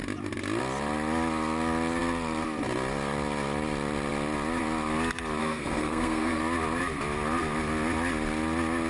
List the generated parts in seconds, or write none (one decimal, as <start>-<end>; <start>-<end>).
5.4-6.4